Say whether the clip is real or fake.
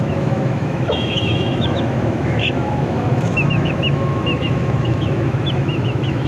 fake